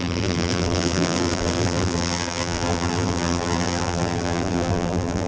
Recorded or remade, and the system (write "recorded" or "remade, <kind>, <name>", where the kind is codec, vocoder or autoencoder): remade, vocoder, BigVGAN v2